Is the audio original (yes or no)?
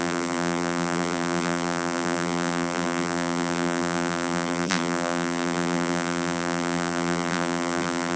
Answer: no